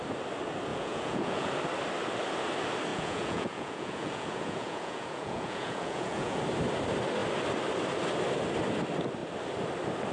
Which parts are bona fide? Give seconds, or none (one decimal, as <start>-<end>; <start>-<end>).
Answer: 0.0-0.7; 1.5-2.9; 6.4-10.1

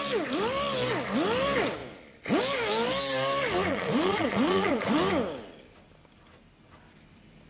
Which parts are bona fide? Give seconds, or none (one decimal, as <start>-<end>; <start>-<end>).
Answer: 0.0-3.7; 5.0-7.5

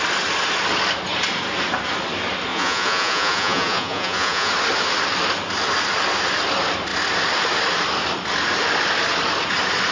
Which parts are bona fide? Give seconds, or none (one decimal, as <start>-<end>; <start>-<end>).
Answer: 0.0-2.5; 4.5-9.9

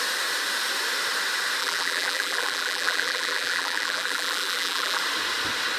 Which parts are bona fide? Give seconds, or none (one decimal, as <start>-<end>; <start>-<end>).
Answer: 0.0-1.6; 5.0-5.8

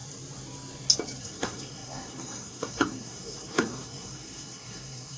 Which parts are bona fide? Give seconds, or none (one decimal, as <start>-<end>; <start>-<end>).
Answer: 0.0-1.2

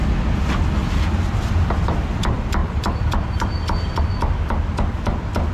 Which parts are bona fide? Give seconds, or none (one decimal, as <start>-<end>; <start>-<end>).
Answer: 0.0-0.8; 1.4-2.6; 4.0-5.5